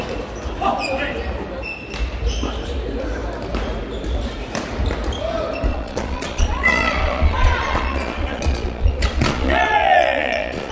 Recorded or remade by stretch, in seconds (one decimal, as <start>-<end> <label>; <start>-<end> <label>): 0.0-5.7 recorded; 5.7-10.7 remade